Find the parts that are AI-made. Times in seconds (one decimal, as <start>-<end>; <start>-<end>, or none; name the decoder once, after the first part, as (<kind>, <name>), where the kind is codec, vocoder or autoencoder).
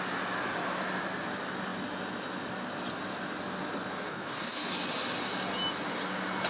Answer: 4.1-4.7 (codec, HILCodec)